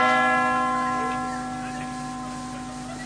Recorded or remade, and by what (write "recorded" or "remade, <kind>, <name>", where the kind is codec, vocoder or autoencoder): recorded